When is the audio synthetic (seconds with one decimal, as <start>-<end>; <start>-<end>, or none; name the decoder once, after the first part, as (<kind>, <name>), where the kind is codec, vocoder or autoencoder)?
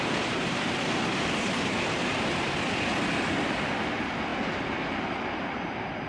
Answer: 0.0-2.9 (vocoder, BigVGAN v2); 3.8-6.1